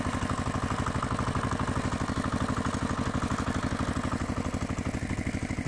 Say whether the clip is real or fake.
real